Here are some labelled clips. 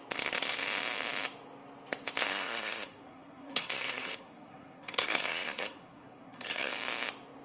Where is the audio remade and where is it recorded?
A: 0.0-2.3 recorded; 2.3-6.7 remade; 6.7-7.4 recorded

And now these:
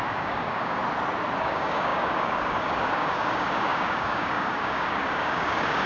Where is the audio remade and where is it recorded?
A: 0.0-0.8 remade; 0.8-1.4 recorded; 1.4-5.9 remade

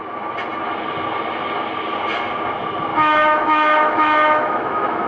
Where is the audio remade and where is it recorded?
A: 0.0-2.9 recorded; 2.9-5.1 remade